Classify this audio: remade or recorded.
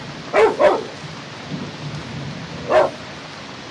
recorded